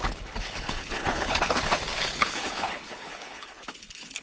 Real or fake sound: fake